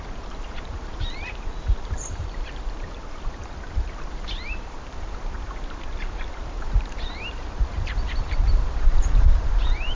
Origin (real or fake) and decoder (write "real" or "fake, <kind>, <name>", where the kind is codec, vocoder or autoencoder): fake, vocoder, BigVGAN v2